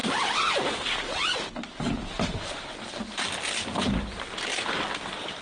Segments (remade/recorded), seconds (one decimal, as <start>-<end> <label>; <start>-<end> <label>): 0.0-5.4 recorded

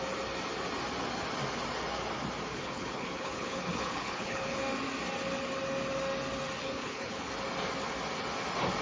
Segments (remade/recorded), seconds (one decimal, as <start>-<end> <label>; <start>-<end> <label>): 0.0-2.5 recorded; 2.5-4.6 remade; 4.6-6.6 recorded; 6.6-7.3 remade; 7.3-8.8 recorded

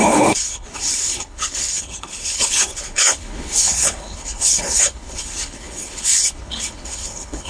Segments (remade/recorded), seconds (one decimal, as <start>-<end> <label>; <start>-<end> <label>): 0.0-7.5 remade

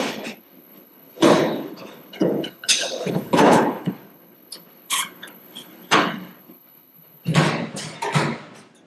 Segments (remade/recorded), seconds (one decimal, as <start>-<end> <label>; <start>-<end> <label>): 0.0-7.3 remade; 7.3-8.9 recorded